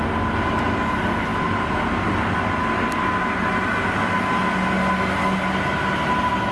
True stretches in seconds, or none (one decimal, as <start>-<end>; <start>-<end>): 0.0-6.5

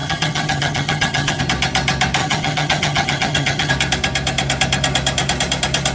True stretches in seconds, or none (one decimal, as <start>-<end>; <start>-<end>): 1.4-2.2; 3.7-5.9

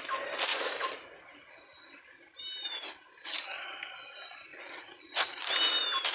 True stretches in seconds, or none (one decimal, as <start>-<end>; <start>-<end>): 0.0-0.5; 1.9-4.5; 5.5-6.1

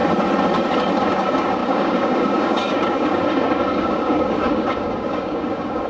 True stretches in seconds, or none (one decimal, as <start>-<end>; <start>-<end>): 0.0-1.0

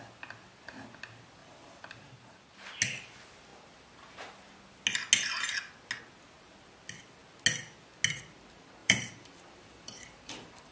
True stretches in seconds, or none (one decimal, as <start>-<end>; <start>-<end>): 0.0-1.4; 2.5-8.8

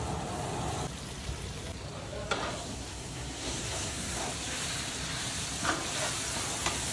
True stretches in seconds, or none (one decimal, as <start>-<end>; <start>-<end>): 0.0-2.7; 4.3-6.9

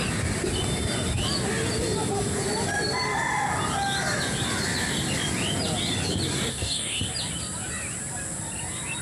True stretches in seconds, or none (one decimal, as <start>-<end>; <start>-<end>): 0.0-6.5; 7.0-9.0

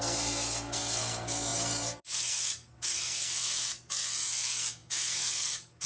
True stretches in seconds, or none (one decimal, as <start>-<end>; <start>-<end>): none